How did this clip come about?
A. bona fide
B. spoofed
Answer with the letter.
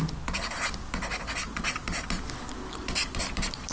A